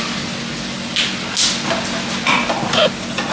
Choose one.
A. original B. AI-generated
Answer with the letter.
A